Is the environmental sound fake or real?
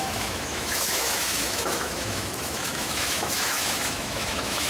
fake